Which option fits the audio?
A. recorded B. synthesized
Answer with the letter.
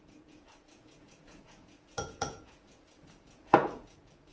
B